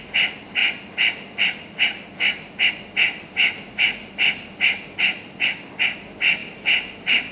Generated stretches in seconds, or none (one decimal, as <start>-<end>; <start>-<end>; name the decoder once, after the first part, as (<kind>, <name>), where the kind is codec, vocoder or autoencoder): 6.4-7.3 (vocoder, BigVGAN v2)